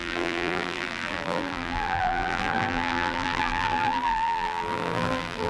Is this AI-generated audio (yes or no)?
yes